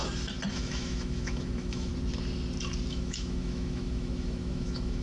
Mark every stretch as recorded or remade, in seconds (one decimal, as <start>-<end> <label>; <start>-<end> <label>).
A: 0.0-0.5 recorded; 0.5-1.9 remade; 1.9-2.9 recorded; 2.9-5.0 remade